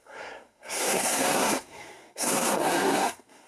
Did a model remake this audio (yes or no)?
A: yes